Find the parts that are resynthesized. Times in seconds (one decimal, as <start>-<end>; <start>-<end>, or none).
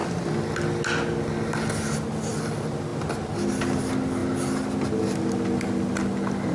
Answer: none